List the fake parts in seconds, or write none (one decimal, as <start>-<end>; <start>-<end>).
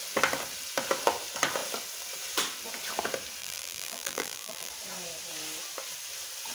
3.4-4.7